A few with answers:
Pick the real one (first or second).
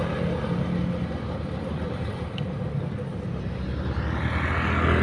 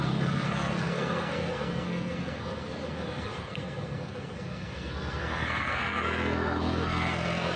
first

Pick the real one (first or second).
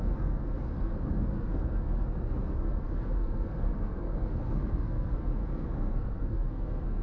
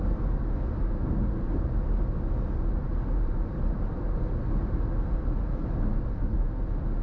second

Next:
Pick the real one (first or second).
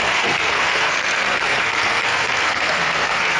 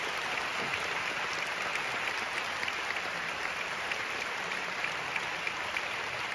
second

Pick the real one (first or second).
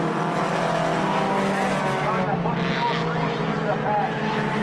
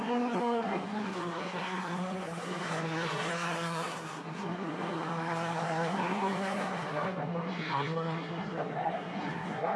first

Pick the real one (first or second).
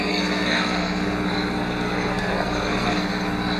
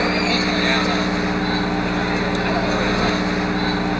second